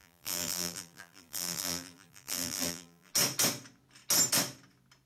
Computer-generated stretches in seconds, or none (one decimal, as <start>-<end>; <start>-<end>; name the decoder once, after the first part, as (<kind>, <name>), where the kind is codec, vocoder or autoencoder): 0.0-3.1 (vocoder, BigVGAN v2)